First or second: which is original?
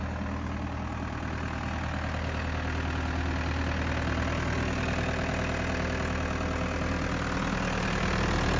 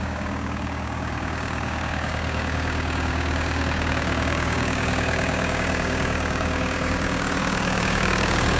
first